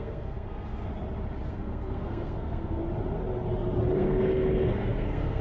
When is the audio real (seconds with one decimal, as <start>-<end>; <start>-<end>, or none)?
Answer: 0.9-1.5; 2.8-3.9